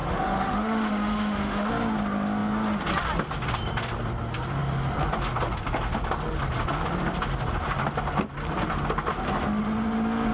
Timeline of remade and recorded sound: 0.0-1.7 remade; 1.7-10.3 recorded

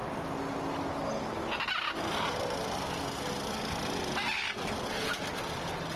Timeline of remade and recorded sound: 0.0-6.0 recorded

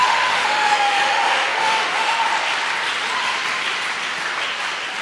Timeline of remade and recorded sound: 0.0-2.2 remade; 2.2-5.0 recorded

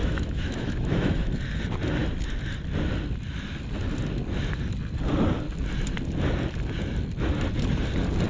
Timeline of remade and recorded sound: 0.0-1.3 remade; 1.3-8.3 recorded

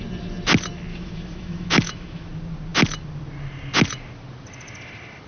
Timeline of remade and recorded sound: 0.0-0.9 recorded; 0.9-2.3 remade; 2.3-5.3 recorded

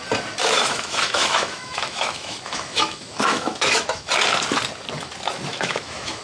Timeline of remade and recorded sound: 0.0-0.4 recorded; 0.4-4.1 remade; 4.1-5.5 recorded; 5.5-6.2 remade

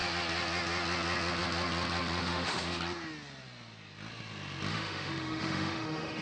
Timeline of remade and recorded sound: 0.0-2.2 recorded; 2.2-2.8 remade; 2.8-4.7 recorded; 4.7-6.2 remade

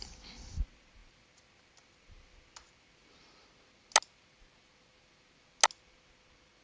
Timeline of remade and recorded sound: 0.0-6.6 recorded